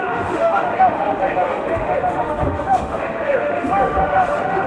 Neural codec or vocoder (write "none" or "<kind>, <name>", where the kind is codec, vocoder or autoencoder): autoencoder, DAC-VAE